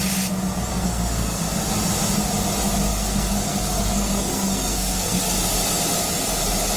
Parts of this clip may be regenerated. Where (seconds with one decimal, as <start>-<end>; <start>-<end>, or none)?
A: 0.7-1.4; 2.9-5.2

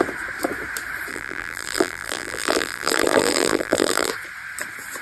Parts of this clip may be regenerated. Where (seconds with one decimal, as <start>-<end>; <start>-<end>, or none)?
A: 1.1-4.1

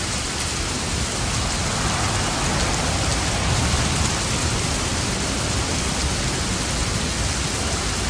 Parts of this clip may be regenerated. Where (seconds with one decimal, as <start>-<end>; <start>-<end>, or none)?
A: 3.1-6.0

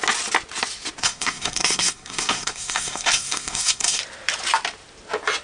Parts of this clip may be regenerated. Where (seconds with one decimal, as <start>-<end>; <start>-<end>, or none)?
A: 1.0-4.0